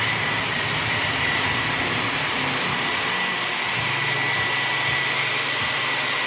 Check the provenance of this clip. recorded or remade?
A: remade